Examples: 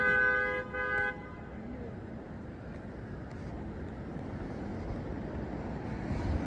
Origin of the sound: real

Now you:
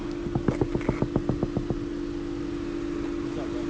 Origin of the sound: real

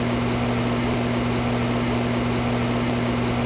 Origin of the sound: real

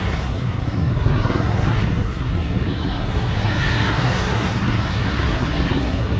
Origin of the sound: fake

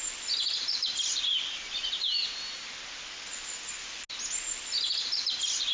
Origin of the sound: real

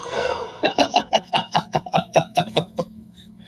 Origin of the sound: fake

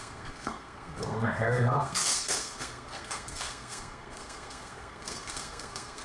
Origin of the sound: fake